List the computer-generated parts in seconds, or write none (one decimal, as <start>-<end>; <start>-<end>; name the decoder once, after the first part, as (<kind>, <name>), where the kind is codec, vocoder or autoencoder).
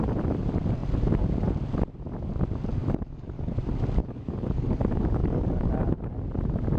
2.8-3.5 (codec, DAC); 4.0-5.7